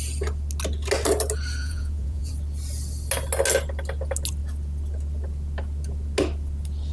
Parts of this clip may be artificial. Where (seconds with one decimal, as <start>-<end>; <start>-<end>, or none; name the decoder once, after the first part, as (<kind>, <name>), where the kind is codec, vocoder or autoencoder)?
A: 1.6-2.3 (vocoder, Vocos)

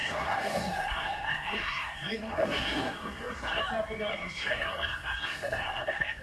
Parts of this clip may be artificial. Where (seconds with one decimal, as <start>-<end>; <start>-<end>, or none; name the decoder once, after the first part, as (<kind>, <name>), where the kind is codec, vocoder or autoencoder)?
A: 0.0-3.6 (codec, SNAC); 4.1-6.2